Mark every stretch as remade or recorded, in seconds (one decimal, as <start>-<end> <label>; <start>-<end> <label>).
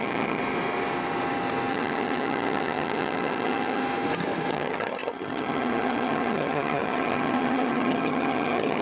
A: 0.0-0.4 remade; 0.4-1.7 recorded; 1.7-3.8 remade; 3.8-4.5 recorded; 4.5-8.8 remade